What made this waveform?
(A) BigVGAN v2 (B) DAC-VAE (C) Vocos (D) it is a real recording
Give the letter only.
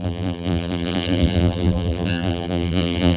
A